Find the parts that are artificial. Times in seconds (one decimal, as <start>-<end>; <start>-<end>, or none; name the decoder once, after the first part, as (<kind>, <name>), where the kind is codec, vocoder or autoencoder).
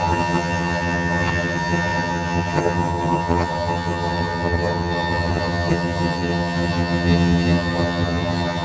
0.0-8.6 (vocoder, HiFi-GAN)